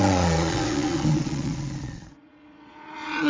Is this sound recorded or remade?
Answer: remade